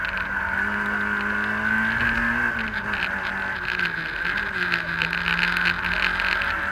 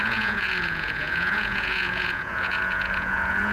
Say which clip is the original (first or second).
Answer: first